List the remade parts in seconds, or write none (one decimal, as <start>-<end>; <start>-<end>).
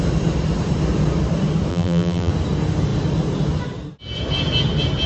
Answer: 1.7-2.3